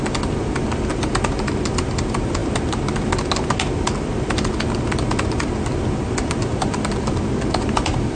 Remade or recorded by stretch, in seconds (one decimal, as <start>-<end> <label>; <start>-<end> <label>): 0.0-0.9 remade; 0.9-2.0 recorded; 2.0-2.4 remade; 2.4-6.0 recorded; 6.0-8.1 remade

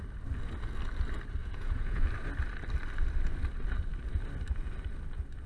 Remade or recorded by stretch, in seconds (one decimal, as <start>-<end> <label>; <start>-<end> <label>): 0.0-1.4 recorded; 1.4-2.0 remade; 2.0-5.5 recorded

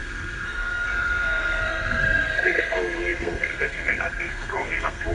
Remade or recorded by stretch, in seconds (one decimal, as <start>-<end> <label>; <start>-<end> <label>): 0.0-5.1 remade

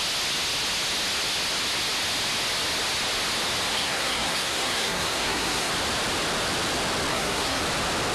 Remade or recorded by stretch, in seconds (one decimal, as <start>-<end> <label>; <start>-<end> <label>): 0.0-3.7 recorded; 3.7-5.7 remade; 5.7-7.1 recorded; 7.1-7.6 remade; 7.6-8.1 recorded